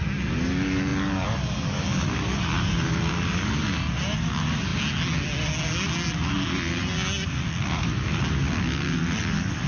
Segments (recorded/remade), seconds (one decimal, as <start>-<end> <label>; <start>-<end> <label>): 0.0-9.7 recorded